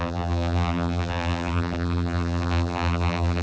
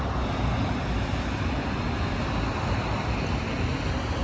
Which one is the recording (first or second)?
second